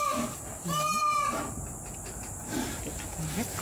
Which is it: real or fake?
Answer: real